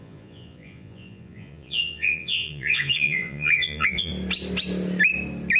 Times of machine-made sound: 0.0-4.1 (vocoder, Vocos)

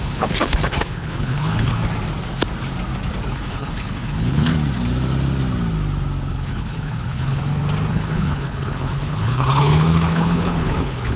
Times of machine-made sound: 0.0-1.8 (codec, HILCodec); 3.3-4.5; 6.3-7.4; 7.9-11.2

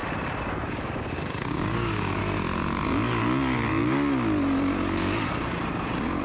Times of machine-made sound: 0.7-2.2 (codec, DAC)

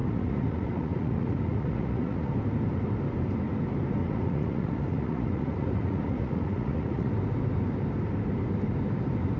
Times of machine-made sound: 0.0-2.3 (vocoder, Vocos); 4.0-7.1

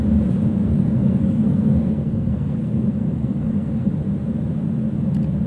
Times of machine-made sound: 0.6-3.9 (codec, SNAC)

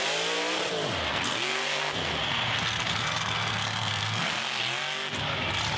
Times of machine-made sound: 1.1-4.6 (codec, SNAC)

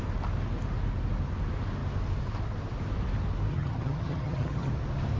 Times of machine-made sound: 3.5-4.7 (vocoder, HiFi-GAN)

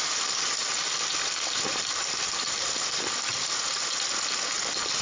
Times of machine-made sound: 0.6-3.6 (vocoder, BigVGAN v2)